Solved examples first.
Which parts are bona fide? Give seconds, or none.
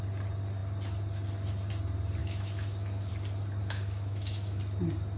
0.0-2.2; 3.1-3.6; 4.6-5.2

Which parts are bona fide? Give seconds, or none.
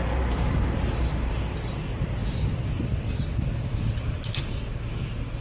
1.4-5.4